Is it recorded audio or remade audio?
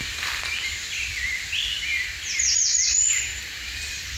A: remade